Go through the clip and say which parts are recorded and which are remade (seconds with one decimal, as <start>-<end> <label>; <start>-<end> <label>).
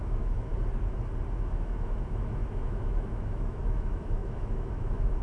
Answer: 0.0-0.5 remade; 0.5-1.3 recorded; 1.3-5.2 remade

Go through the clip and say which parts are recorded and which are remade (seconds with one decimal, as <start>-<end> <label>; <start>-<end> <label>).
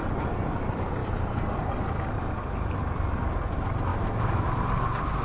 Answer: 0.0-3.9 recorded; 3.9-4.6 remade; 4.6-5.2 recorded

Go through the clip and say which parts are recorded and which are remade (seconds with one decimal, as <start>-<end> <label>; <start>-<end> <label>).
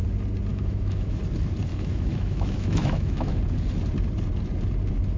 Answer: 0.0-0.5 recorded; 0.5-1.2 remade; 1.2-1.7 recorded; 1.7-3.4 remade; 3.4-5.2 recorded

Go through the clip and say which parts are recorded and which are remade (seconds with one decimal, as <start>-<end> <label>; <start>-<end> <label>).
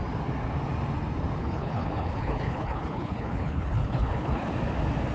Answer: 0.0-1.4 recorded; 1.4-4.5 remade; 4.5-5.1 recorded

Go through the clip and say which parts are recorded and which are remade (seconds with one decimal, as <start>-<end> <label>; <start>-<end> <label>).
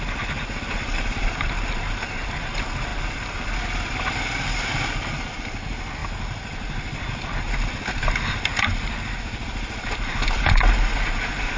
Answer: 0.0-11.6 recorded